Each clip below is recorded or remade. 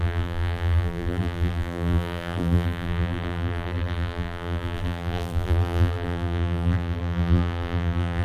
remade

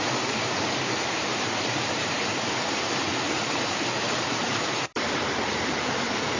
remade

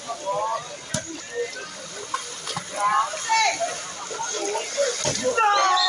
recorded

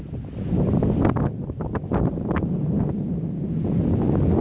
recorded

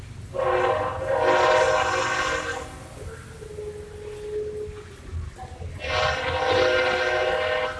recorded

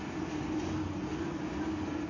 recorded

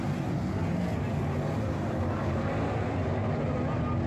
recorded